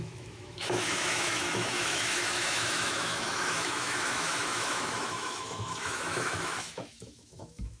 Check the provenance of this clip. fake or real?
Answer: fake